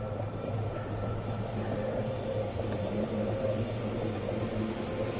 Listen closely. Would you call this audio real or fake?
real